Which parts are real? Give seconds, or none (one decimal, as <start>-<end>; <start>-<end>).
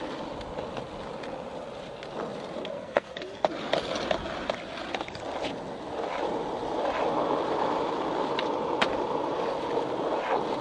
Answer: 0.0-2.6; 3.5-10.6